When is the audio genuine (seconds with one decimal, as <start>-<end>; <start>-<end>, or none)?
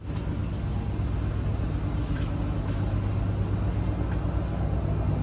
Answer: 0.0-5.2